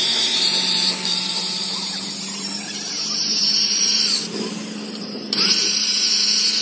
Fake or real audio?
fake